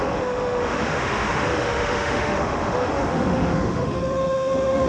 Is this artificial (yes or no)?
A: yes